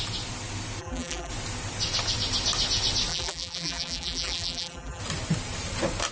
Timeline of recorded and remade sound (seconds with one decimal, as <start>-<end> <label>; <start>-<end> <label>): 0.0-0.8 recorded; 0.8-1.3 remade; 1.3-3.1 recorded; 3.1-5.0 remade; 5.0-6.1 recorded